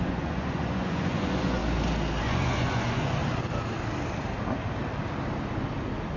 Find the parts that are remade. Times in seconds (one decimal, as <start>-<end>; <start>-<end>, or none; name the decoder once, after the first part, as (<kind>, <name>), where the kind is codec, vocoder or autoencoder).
0.0-1.6 (vocoder, Vocos); 2.2-3.2